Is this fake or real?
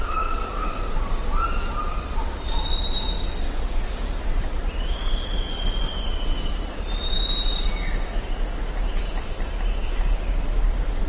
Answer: real